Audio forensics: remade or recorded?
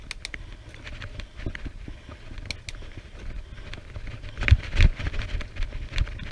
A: recorded